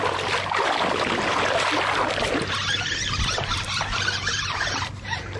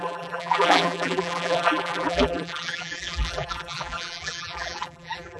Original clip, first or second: first